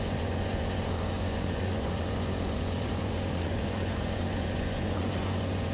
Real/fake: fake